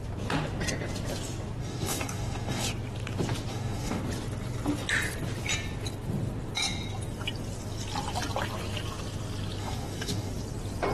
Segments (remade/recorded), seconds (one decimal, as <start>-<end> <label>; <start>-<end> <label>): 0.0-1.6 recorded; 1.6-2.7 remade; 2.7-3.5 recorded; 3.5-4.0 remade; 4.0-9.6 recorded; 9.6-10.3 remade; 10.3-10.9 recorded